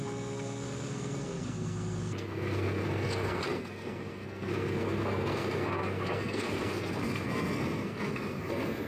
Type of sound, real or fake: fake